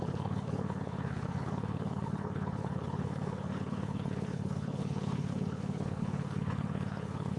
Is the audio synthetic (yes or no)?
yes